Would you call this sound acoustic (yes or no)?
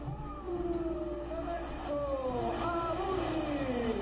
no